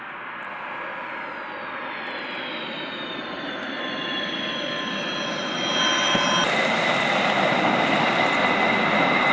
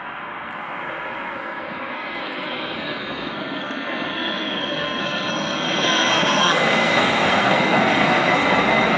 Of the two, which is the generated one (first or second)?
second